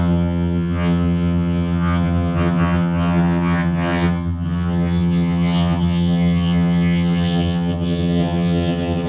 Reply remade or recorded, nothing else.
remade